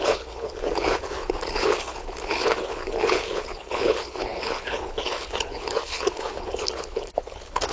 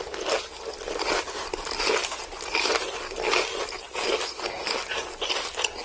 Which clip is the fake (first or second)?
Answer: first